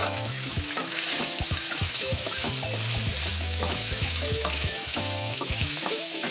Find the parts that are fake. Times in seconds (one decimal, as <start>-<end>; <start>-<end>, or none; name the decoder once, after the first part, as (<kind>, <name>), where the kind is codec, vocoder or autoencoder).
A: 0.0-2.5 (autoencoder, DAC-VAE); 3.3-6.3